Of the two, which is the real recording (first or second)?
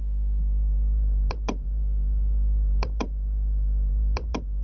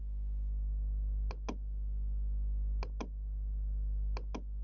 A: second